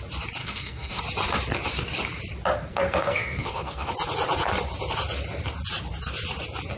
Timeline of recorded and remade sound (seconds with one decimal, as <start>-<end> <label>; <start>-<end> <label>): 0.0-0.4 recorded; 0.4-1.0 remade; 1.0-2.7 recorded; 2.7-3.9 remade; 3.9-6.8 recorded